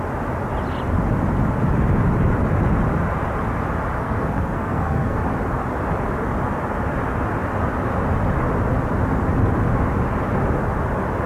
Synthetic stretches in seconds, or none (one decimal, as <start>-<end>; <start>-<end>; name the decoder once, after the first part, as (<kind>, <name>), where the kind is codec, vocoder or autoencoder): 4.0-5.2 (codec, SNAC)

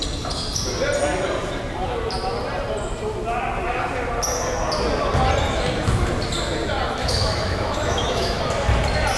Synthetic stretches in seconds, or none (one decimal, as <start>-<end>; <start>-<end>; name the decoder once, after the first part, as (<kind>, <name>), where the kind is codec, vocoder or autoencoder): 7.0-8.4 (autoencoder, DAC-VAE)

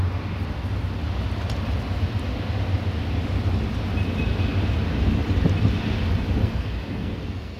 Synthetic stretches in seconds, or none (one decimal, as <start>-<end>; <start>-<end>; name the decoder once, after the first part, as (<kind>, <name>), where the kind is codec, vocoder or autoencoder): 6.4-7.6 (codec, SNAC)